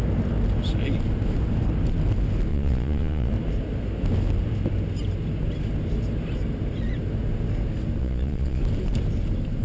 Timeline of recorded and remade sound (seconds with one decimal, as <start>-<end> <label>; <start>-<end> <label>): 0.0-2.5 recorded; 2.5-3.3 remade; 3.3-8.0 recorded; 8.0-8.6 remade; 8.6-9.6 recorded